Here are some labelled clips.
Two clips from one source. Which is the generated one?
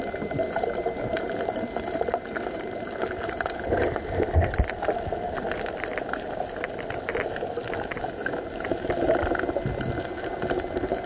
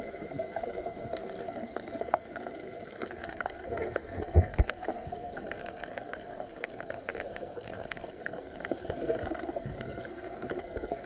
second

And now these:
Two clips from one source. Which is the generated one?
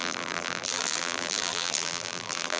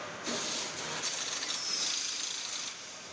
first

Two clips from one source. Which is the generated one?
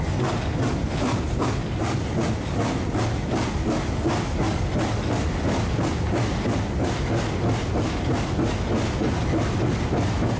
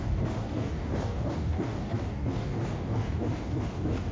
second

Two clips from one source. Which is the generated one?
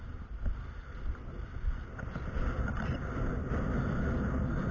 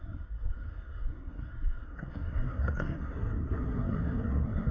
second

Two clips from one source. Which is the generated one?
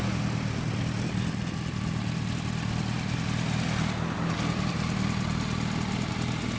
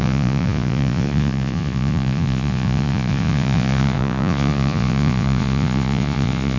second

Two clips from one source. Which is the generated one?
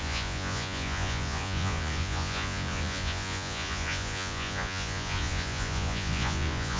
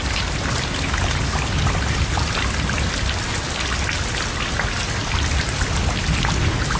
first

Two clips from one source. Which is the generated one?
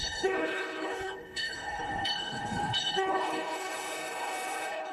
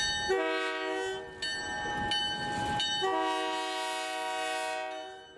first